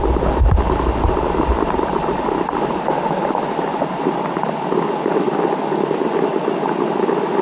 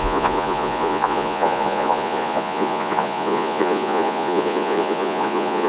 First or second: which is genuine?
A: first